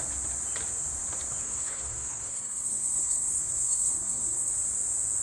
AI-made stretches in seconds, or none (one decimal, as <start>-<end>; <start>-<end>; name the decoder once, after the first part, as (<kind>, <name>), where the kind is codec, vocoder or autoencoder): 1.4-4.5 (codec, SNAC)